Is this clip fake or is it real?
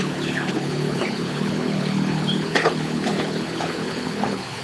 fake